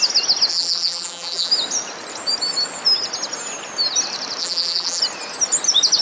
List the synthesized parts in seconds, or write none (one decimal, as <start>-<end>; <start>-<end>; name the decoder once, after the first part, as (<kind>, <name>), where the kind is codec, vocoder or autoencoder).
0.5-1.5 (vocoder, BigVGAN v2); 4.4-5.0